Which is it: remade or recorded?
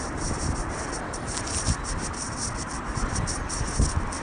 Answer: recorded